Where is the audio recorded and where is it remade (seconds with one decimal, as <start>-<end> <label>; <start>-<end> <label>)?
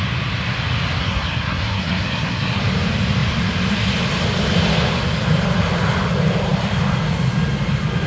0.0-1.0 recorded; 1.0-2.6 remade; 2.6-8.1 recorded